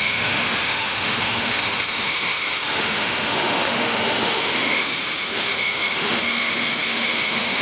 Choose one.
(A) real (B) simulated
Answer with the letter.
B